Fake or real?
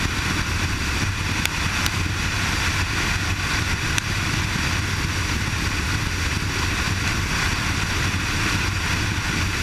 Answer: real